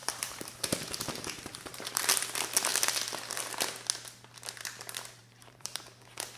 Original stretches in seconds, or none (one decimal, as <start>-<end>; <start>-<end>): 2.0-5.2; 5.8-6.4